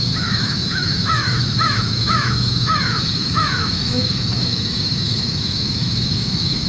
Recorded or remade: remade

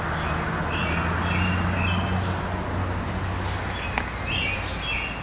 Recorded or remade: recorded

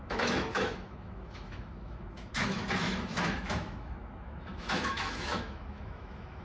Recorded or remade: remade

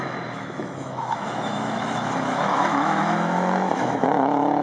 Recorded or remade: remade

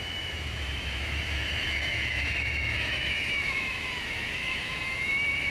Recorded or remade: remade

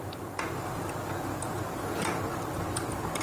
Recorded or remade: recorded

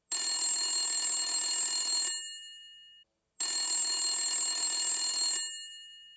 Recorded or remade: recorded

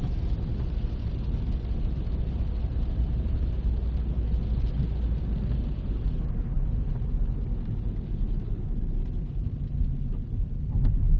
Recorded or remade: recorded